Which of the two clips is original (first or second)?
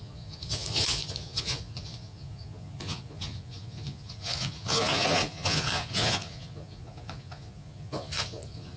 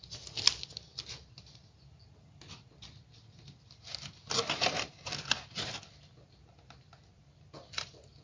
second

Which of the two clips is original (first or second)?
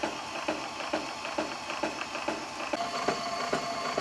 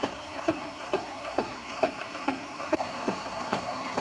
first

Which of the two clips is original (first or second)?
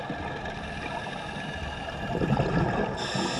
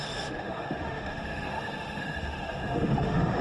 first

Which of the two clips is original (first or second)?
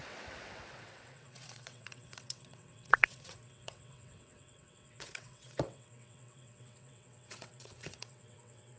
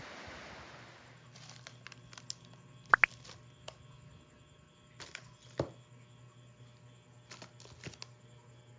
second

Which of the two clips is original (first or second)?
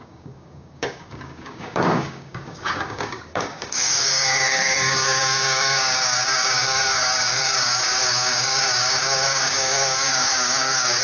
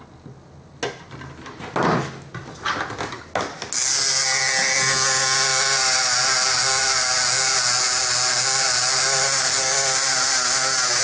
second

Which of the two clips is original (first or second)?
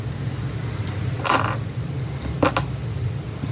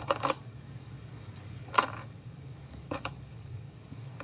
first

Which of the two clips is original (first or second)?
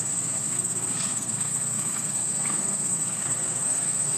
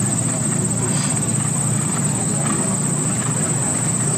second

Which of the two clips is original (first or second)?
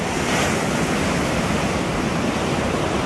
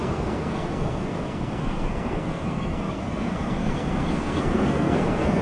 first